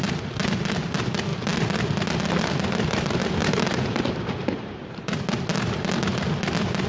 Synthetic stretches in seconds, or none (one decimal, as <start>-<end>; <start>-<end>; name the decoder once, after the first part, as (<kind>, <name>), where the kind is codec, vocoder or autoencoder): 3.4-4.0 (vocoder, BigVGAN v2); 4.4-5.2